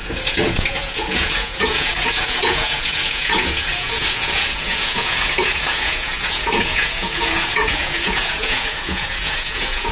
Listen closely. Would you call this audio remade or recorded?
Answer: remade